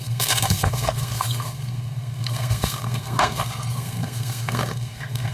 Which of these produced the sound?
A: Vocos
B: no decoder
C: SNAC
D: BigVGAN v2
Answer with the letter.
C